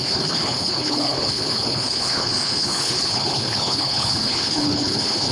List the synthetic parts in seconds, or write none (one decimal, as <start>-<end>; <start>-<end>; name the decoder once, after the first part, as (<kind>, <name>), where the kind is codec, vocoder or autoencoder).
0.0-5.3 (codec, HILCodec)